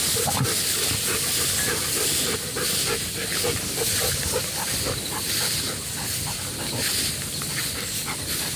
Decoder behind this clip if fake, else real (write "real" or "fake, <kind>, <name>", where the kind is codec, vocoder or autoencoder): real